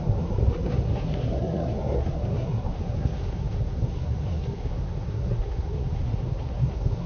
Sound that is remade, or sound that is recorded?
remade